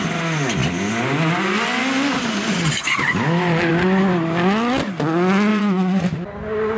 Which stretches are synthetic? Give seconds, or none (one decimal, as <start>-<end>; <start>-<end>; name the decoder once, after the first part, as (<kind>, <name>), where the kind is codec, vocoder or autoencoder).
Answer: 5.5-6.0 (vocoder, Vocos)